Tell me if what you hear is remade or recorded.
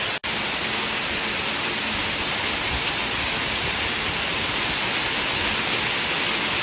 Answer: recorded